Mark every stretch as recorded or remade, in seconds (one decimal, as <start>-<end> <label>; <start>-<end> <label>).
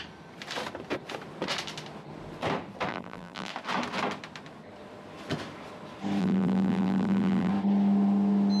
0.0-2.9 recorded; 2.9-3.5 remade; 3.5-6.2 recorded; 6.2-7.5 remade; 7.5-8.6 recorded